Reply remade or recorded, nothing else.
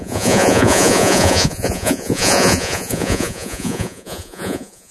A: remade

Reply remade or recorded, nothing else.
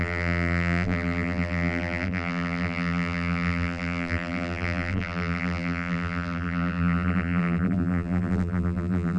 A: remade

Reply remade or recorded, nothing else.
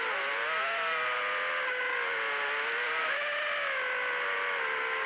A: recorded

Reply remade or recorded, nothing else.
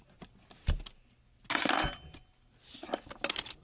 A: recorded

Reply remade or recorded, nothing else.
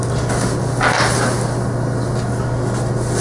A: recorded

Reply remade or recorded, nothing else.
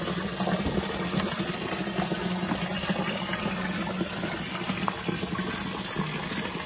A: recorded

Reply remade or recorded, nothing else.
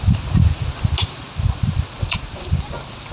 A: recorded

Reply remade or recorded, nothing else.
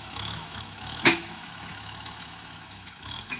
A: remade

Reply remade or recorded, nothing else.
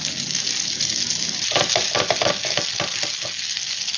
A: recorded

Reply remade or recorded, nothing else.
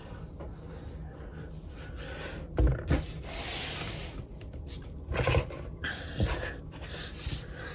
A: recorded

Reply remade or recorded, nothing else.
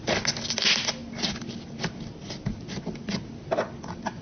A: recorded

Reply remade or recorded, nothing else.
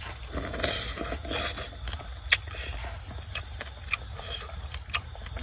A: recorded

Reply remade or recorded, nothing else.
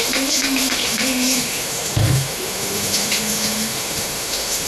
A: remade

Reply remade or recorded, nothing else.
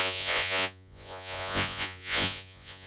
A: remade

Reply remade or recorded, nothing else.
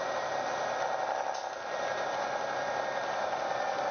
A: recorded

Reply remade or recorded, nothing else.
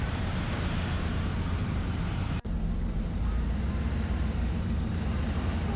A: remade